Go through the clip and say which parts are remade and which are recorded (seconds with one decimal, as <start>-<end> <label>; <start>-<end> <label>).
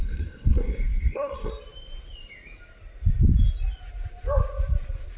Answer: 0.0-1.5 remade; 1.5-5.2 recorded